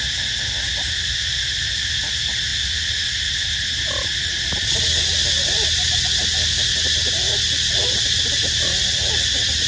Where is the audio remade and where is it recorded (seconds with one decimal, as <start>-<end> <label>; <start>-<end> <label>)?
0.0-9.7 recorded